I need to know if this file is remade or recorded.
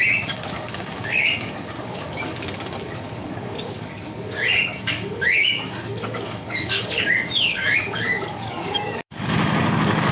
remade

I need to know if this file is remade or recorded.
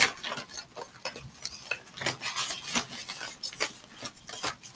recorded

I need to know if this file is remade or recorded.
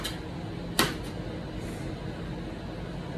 recorded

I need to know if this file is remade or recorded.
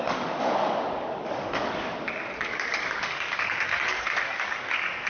remade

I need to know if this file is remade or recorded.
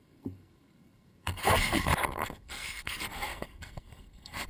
remade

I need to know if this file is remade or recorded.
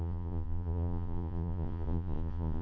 remade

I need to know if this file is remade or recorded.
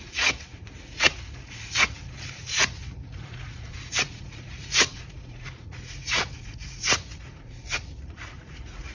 remade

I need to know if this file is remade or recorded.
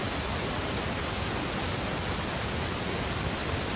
recorded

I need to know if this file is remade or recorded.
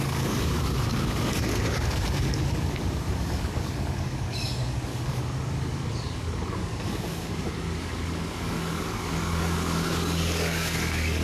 remade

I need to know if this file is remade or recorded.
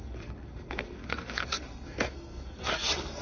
remade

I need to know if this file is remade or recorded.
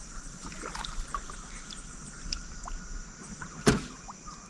remade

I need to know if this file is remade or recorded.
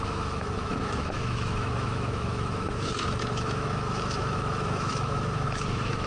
remade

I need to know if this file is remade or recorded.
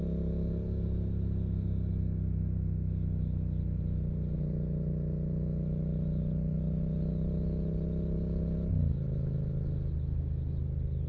recorded